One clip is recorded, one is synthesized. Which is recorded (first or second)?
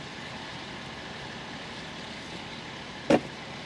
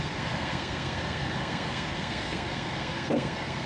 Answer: first